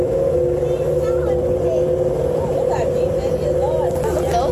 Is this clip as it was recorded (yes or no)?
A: yes